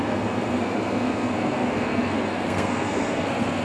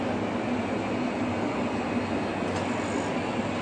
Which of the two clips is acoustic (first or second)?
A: second